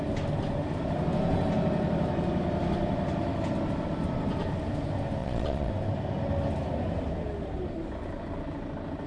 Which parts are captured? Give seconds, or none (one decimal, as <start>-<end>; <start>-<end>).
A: 0.0-5.2; 5.7-9.1